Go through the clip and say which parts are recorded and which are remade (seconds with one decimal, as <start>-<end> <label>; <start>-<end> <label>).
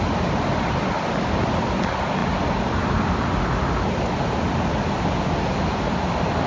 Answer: 0.0-6.5 recorded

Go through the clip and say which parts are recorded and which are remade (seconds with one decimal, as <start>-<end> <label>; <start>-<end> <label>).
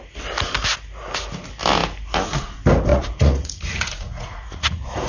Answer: 0.0-2.9 recorded; 2.9-5.1 remade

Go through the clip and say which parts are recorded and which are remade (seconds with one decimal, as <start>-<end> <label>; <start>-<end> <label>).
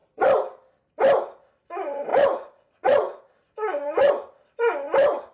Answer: 0.0-2.1 recorded; 2.1-4.1 remade; 4.1-5.3 recorded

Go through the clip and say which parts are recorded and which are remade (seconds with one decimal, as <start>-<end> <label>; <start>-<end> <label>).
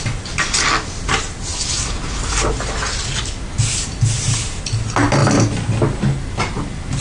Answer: 0.0-7.0 recorded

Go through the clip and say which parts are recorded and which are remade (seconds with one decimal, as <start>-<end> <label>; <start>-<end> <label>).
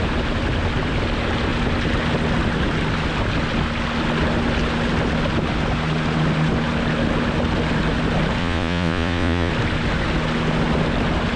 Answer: 0.0-8.4 recorded; 8.4-9.5 remade; 9.5-11.4 recorded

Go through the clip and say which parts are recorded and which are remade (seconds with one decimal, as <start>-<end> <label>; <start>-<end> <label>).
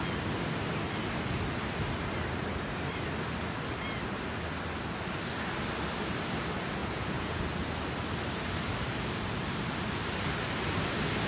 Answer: 0.0-6.8 recorded; 6.8-7.4 remade; 7.4-11.3 recorded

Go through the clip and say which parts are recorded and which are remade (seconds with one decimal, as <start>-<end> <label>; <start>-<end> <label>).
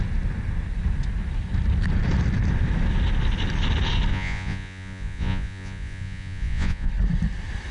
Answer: 0.0-4.1 recorded; 4.1-6.9 remade; 6.9-7.7 recorded